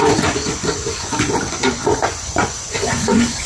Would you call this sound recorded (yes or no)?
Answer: no